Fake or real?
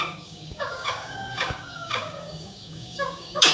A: fake